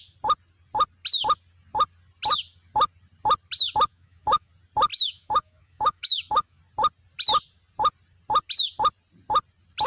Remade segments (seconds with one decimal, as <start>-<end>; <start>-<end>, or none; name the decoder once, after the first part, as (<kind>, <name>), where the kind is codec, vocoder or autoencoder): 3.9-4.5 (autoencoder, DAC-VAE); 4.9-6.6

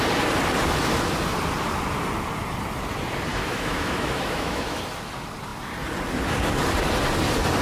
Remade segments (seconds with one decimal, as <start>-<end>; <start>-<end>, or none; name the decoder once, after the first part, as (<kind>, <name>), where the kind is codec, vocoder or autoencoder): 3.3-4.8 (autoencoder, DAC-VAE)

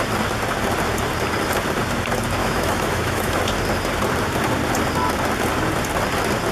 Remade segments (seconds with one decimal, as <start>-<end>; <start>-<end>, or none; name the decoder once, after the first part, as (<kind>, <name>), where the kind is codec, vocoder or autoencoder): 2.4-3.4 (autoencoder, DAC-VAE)

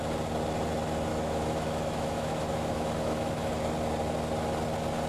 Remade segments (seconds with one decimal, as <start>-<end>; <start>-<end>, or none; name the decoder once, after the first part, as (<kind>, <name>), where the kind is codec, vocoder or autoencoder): 1.1-3.5 (autoencoder, DAC-VAE)

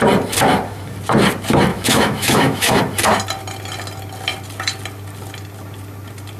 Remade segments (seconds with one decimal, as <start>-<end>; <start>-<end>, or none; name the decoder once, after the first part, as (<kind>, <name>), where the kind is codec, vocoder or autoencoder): 1.7-2.8 (autoencoder, DAC-VAE)

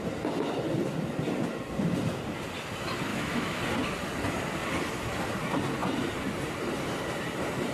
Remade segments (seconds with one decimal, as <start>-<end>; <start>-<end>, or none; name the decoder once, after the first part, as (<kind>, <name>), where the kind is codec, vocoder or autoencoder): 3.1-3.6 (autoencoder, DAC-VAE)

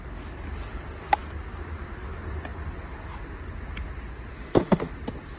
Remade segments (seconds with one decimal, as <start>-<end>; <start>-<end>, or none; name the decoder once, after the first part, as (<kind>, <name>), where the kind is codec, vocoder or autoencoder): 4.3-4.9 (autoencoder, DAC-VAE)

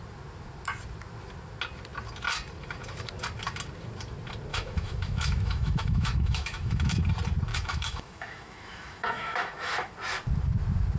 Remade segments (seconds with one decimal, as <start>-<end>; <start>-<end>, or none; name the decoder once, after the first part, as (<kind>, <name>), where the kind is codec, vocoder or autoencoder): 4.5-7.0 (autoencoder, DAC-VAE); 7.5-9.9